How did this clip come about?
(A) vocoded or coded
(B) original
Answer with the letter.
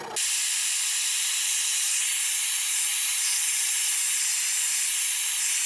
B